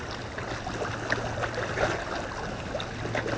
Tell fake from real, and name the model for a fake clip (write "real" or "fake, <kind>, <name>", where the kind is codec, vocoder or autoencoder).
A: real